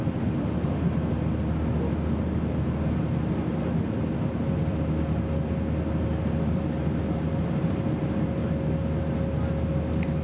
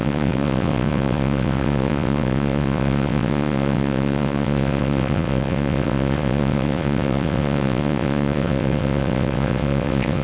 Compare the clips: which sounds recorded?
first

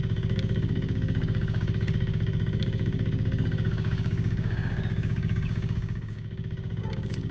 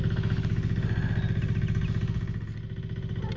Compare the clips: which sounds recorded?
second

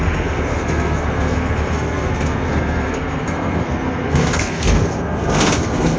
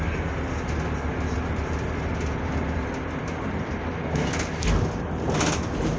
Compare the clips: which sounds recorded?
second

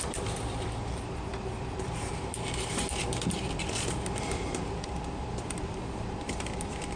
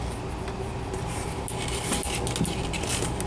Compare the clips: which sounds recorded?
second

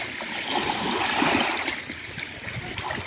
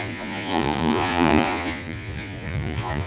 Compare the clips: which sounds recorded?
first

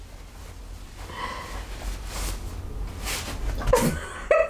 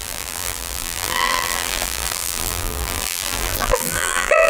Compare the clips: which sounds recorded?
first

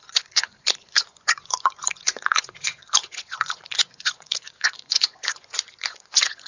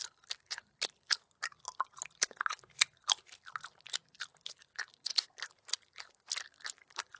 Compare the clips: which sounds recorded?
second